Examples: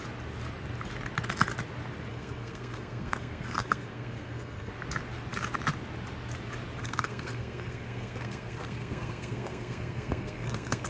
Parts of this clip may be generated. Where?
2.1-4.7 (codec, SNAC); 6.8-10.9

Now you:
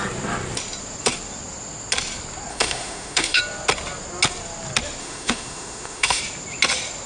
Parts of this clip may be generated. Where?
2.5-3.4 (autoencoder, DAC-VAE); 5.0-6.2

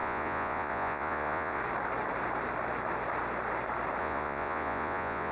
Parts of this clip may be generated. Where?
0.0-1.6 (vocoder, Vocos); 4.0-5.3

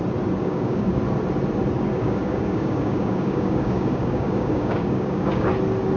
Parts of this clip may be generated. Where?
0.4-1.0 (codec, DAC); 1.9-5.5

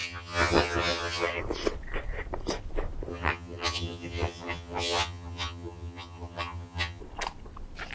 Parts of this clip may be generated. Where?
0.0-1.4 (vocoder, HiFi-GAN); 3.1-7.0

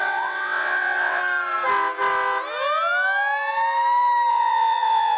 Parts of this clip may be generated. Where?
0.0-1.2 (vocoder, WaveNeXt); 4.3-5.2

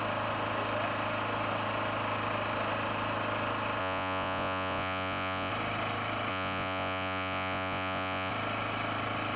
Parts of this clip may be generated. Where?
3.8-5.5 (vocoder, Vocos); 6.3-8.3

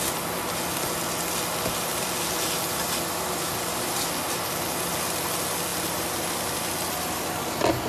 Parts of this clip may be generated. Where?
none